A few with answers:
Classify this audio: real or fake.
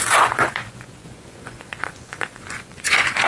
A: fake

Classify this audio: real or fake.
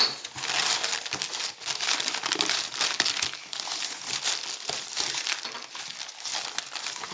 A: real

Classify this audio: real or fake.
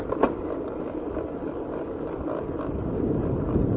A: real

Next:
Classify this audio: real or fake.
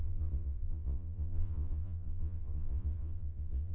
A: fake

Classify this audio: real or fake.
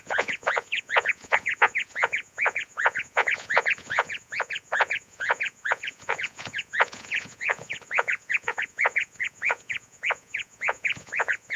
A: fake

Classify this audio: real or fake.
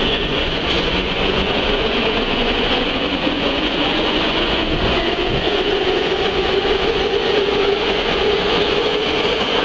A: fake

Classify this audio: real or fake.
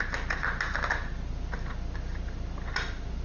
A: real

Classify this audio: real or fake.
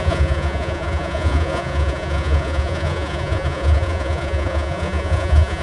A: fake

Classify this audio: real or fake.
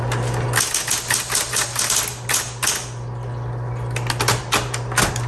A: real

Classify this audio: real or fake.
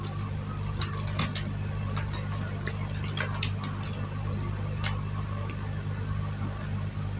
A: real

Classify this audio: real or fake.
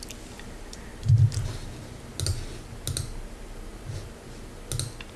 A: real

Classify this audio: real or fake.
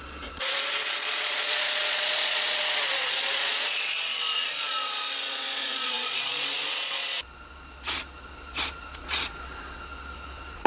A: fake